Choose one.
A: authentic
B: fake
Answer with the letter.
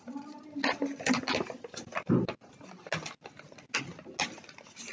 A